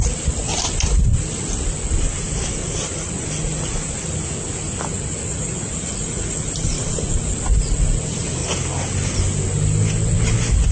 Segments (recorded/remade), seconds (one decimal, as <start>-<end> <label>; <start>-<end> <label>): 0.0-2.6 recorded; 2.6-3.1 remade; 3.1-5.3 recorded; 5.3-7.4 remade; 7.4-10.7 recorded